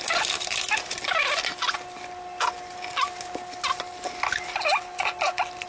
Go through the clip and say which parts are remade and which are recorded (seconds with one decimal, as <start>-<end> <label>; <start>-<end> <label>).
0.0-5.7 recorded